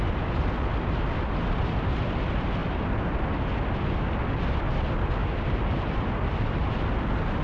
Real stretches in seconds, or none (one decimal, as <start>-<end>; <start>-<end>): 0.0-5.2; 6.8-7.4